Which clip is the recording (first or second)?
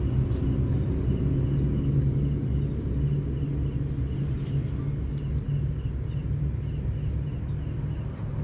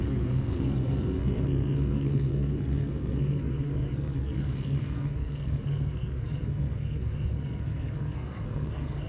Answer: first